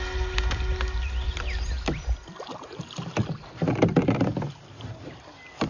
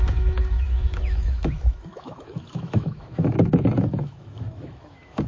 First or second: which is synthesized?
second